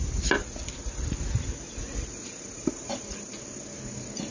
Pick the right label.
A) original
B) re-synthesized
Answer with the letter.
A